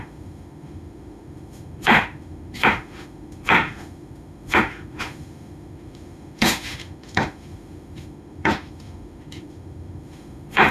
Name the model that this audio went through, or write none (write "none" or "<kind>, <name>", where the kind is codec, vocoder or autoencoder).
autoencoder, DAC-VAE